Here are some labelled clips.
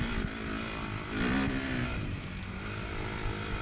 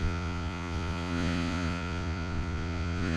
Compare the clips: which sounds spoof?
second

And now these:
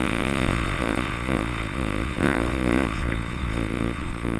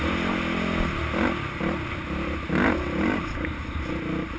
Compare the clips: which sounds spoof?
first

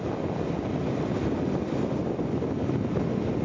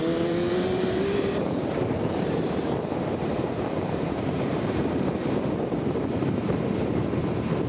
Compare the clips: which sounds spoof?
second